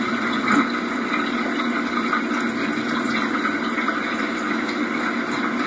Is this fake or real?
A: real